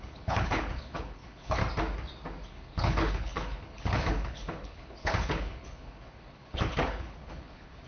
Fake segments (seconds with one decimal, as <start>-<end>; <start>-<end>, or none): 0.0-1.6; 2.5-7.9